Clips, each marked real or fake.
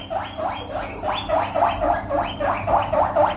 real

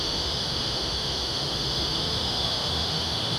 fake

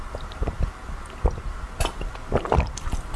real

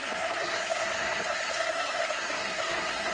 fake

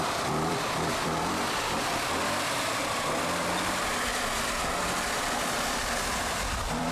fake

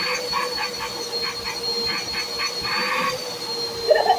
real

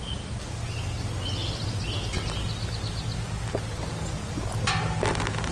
real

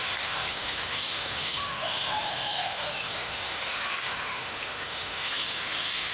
fake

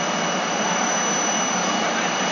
real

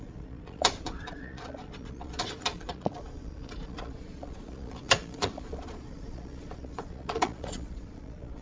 fake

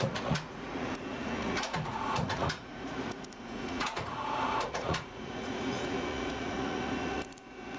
fake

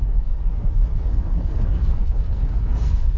fake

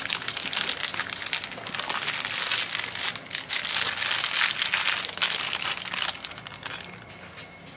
real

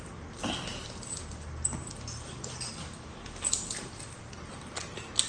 real